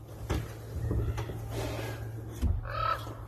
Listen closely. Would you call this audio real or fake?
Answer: real